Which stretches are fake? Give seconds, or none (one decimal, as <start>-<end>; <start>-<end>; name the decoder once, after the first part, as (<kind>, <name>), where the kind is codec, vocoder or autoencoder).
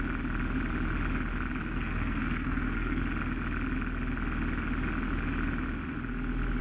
1.6-3.0 (codec, SNAC)